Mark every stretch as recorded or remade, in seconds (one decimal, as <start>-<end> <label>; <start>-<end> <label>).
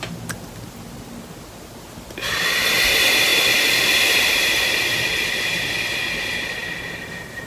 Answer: 0.0-3.3 recorded; 3.3-6.1 remade; 6.1-7.5 recorded